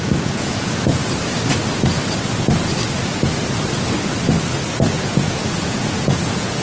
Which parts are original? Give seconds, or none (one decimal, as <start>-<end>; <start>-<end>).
1.0-5.0

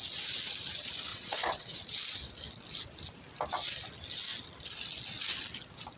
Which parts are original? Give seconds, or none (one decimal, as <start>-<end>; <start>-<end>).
0.0-1.1; 1.8-6.0

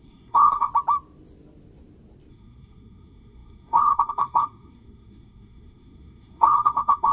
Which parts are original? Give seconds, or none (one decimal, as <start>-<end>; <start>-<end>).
0.7-2.3

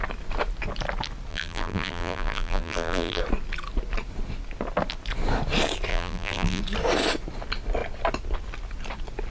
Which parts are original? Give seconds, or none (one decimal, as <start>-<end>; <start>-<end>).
0.0-1.3; 3.2-5.9; 6.6-9.3